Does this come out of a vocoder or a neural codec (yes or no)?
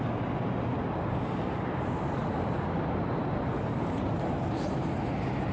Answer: no